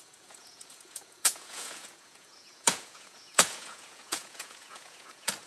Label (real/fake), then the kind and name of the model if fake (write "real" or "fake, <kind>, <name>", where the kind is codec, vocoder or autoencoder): fake, vocoder, Vocos